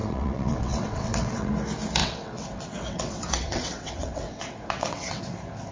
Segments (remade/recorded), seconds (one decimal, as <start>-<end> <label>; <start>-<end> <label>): 0.0-1.5 remade; 1.5-2.0 recorded; 2.0-5.2 remade; 5.2-5.7 recorded